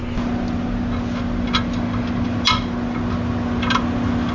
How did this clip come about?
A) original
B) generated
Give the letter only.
A